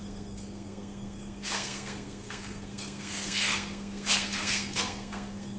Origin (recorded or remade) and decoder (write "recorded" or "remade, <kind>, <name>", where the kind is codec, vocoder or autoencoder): remade, codec, SNAC